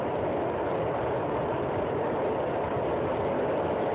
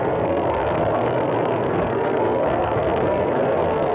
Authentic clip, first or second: first